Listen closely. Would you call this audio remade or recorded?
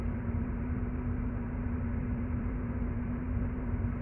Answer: remade